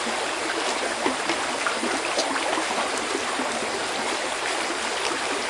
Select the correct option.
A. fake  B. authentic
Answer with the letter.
B